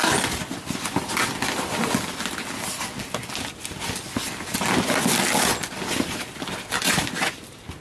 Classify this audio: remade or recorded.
recorded